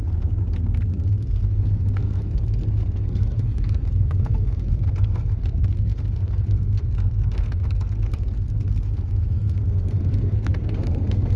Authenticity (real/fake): fake